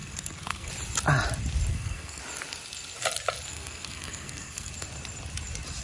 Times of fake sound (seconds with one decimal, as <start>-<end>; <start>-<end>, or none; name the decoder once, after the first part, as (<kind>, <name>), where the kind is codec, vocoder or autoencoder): 0.0-0.7 (codec, SNAC); 1.7-2.2; 3.5-4.7